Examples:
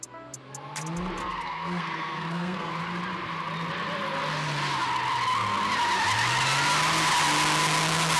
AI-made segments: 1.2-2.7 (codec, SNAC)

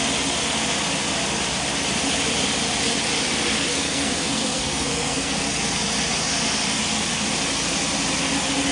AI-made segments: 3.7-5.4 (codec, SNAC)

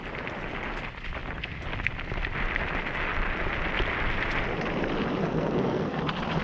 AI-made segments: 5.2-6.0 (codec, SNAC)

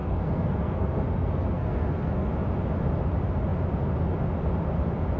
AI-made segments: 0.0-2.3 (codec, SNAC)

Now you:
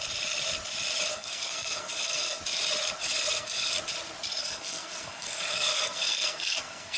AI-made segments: 1.1-2.4 (codec, SNAC); 3.0-3.7; 4.4-7.0